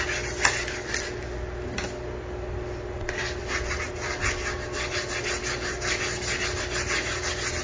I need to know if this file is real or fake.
real